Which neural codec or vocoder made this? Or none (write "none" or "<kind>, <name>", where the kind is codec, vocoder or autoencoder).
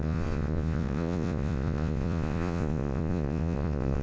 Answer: vocoder, Vocos